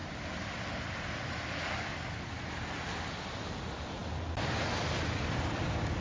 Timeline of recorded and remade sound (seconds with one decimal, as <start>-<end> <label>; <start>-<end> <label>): 0.0-6.0 recorded